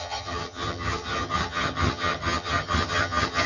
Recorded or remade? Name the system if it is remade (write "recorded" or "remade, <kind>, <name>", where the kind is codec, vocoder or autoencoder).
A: remade, vocoder, HiFi-GAN